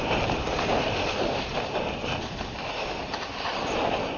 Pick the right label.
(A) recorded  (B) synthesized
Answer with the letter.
A